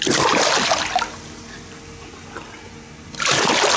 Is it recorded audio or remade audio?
recorded